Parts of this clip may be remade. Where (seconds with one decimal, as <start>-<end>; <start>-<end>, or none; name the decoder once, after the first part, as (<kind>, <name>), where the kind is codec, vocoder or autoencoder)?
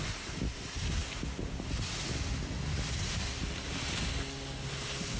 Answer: none